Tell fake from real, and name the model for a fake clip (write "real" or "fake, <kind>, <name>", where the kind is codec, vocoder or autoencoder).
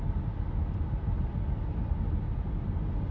real